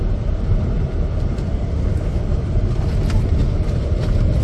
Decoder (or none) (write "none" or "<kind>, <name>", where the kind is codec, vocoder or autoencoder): vocoder, BigVGAN v2